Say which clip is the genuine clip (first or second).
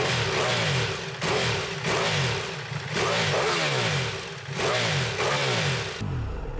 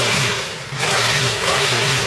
first